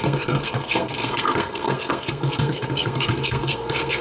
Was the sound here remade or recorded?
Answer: remade